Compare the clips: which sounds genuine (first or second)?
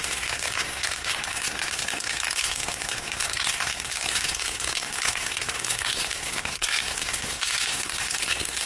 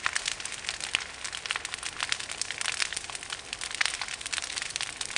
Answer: second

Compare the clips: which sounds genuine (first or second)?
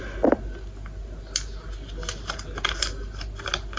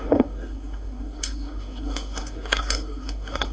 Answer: first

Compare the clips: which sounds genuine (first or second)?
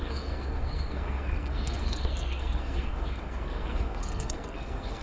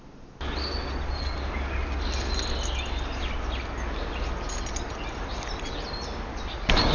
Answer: second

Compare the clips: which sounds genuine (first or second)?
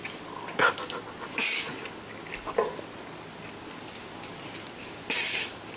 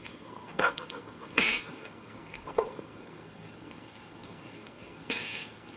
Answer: first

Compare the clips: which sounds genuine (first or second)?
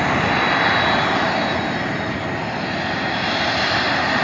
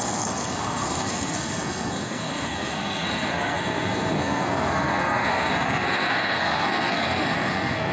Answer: first